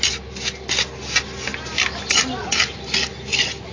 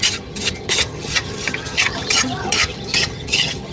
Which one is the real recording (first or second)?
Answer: first